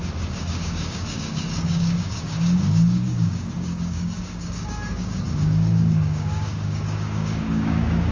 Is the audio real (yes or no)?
no